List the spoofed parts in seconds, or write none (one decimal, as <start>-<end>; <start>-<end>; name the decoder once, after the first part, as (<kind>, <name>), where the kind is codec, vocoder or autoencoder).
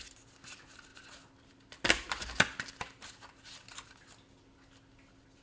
none